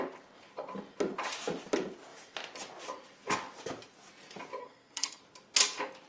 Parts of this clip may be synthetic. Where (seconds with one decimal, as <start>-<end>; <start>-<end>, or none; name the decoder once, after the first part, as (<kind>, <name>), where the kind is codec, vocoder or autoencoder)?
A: 4.6-5.2 (codec, SNAC)